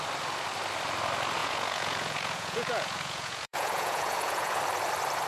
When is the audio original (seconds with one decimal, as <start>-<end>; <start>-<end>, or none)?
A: 0.0-1.4; 4.6-5.3